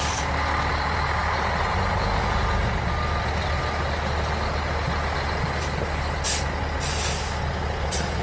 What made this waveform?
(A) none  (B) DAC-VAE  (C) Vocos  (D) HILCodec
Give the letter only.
A